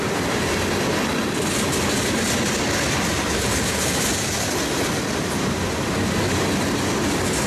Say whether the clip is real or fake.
real